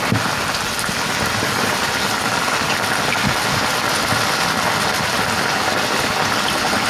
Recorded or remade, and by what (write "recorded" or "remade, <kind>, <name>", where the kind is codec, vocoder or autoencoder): recorded